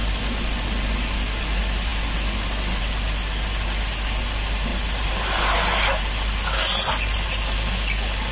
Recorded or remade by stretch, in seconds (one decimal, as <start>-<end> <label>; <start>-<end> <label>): 0.0-4.7 recorded; 4.7-6.0 remade; 6.0-8.3 recorded